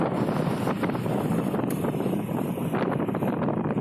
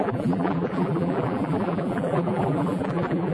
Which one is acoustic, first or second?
first